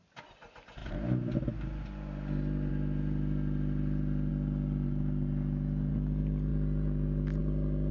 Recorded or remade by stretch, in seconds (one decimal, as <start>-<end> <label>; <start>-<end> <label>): 0.0-7.9 recorded